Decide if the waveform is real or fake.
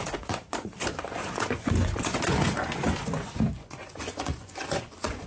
fake